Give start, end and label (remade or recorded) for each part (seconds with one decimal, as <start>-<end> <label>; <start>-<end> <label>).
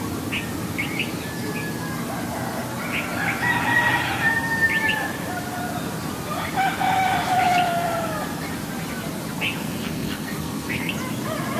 0.0-9.6 recorded; 9.6-10.9 remade; 10.9-11.6 recorded